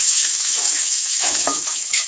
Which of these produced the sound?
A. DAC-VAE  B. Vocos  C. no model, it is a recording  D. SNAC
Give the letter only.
A